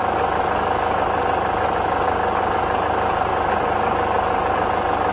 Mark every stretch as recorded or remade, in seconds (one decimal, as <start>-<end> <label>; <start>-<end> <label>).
0.0-5.1 recorded